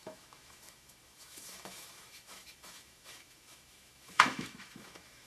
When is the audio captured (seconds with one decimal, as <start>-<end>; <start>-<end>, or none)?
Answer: none